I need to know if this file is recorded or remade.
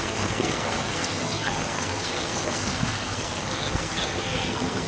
remade